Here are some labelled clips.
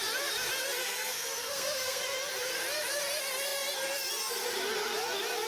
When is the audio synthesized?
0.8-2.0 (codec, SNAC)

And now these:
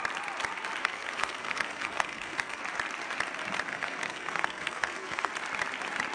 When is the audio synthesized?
0.8-2.6 (codec, SNAC); 3.7-5.3